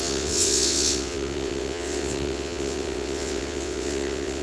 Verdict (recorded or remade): remade